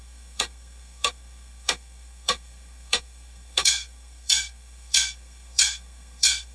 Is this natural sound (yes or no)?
no